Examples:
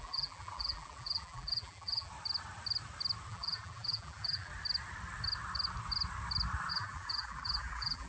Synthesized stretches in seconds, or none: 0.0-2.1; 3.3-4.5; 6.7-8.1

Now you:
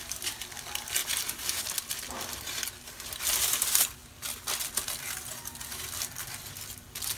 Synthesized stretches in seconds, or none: none

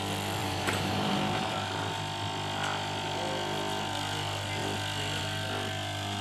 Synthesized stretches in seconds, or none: 0.4-1.5

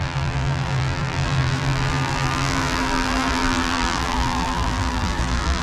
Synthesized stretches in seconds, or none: 0.0-5.6

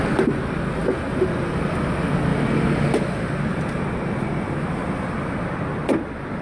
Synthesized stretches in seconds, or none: 2.3-2.8

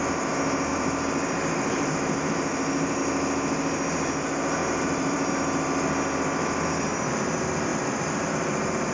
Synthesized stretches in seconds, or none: 0.7-3.0; 4.6-5.3